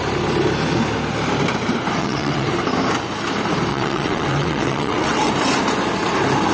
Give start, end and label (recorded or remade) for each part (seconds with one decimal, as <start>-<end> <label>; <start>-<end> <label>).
0.0-2.0 recorded; 2.0-2.5 remade; 2.5-3.7 recorded; 3.7-5.3 remade; 5.3-6.5 recorded